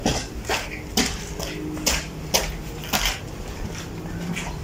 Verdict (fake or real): real